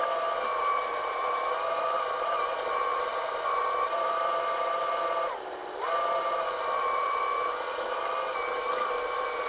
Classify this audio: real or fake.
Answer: fake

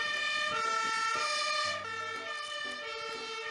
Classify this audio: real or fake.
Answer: real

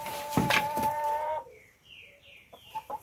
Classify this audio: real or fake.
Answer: fake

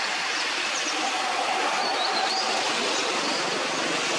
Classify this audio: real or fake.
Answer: real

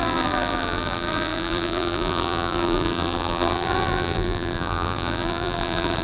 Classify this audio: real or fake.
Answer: fake